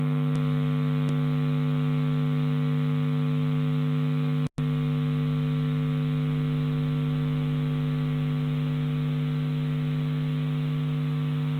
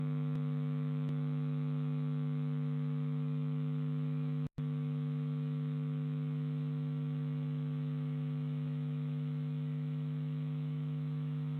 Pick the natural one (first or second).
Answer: first